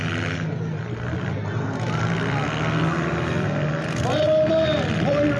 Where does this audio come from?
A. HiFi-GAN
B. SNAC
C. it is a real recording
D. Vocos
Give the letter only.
C